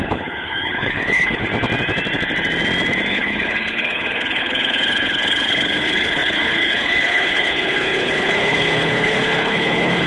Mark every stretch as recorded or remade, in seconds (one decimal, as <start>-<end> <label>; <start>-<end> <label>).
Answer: 0.0-1.5 remade; 1.5-3.1 recorded; 3.1-10.1 remade

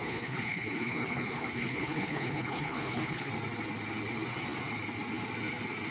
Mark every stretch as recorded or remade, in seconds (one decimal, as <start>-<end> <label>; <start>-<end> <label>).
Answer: 0.0-3.3 remade; 3.3-5.9 recorded

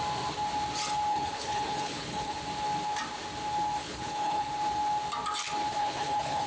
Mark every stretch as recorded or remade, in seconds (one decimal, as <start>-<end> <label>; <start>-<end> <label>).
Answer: 0.0-1.1 recorded; 1.1-2.4 remade; 2.4-3.8 recorded; 3.8-4.5 remade; 4.5-5.8 recorded; 5.8-6.5 remade

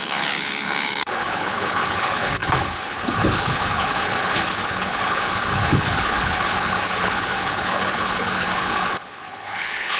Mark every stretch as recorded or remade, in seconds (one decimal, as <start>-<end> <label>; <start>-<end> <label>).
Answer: 0.0-10.0 remade